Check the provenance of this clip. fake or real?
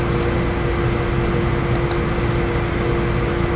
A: real